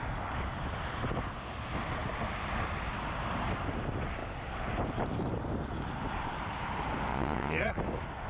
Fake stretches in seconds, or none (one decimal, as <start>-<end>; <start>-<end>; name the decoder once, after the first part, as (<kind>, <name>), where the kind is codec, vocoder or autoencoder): 7.1-7.7 (vocoder, Vocos)

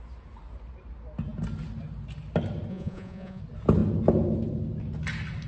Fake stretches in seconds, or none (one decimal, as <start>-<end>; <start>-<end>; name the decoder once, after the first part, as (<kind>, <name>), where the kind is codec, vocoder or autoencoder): 2.7-3.4 (vocoder, Vocos)

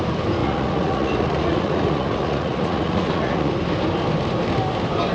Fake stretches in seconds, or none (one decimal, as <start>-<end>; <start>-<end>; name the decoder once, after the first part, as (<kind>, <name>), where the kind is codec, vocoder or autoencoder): 0.4-3.5 (vocoder, Vocos)

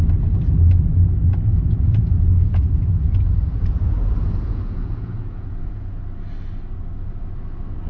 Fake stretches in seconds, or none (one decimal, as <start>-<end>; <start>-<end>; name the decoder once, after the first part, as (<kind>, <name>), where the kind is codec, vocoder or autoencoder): 1.5-6.0 (vocoder, Vocos)

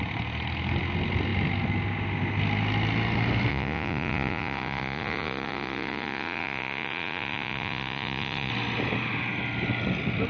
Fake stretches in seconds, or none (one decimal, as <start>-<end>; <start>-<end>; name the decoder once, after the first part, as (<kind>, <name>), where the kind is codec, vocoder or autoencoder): 3.5-8.5 (vocoder, Vocos)

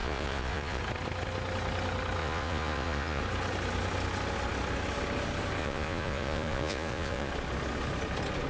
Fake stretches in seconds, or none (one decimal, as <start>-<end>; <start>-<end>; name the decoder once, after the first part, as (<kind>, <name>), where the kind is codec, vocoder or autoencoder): 0.0-0.8 (vocoder, Vocos); 2.2-3.2; 5.6-7.3

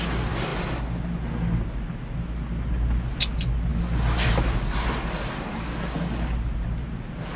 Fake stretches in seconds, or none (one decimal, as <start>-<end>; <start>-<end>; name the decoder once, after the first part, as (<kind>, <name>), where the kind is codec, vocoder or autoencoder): none

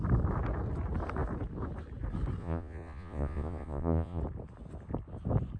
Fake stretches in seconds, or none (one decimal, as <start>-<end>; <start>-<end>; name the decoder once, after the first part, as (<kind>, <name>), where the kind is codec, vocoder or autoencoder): 2.4-4.2 (vocoder, Vocos)